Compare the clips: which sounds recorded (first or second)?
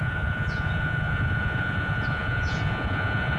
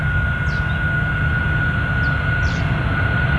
second